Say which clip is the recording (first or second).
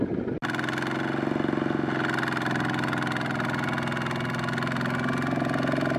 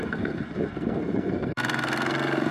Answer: first